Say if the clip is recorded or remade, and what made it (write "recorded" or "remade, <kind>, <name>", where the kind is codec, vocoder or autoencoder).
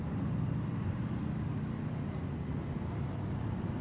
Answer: recorded